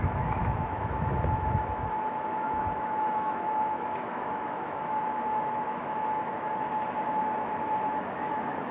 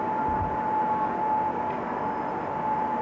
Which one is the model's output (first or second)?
first